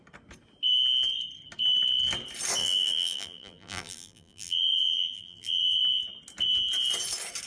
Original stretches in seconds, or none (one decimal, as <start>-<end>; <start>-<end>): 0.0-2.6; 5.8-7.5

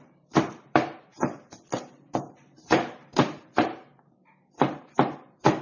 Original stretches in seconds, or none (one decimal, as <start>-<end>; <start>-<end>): 1.1-1.8

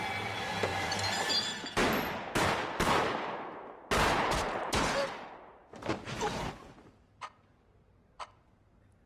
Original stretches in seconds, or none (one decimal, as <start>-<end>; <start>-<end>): 1.8-4.1

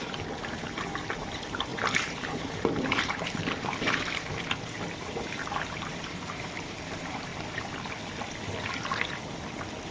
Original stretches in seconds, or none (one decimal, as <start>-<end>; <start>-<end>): 7.3-9.9

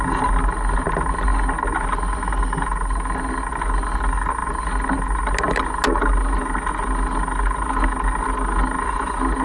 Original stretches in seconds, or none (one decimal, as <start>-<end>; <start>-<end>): 0.0-9.4